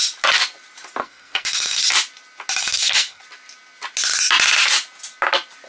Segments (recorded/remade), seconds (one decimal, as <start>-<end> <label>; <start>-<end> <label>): 0.0-1.0 recorded; 1.0-1.8 remade; 1.8-2.6 recorded; 2.6-3.2 remade; 3.2-5.7 recorded